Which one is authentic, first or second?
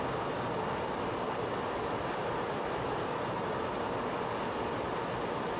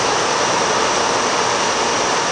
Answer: second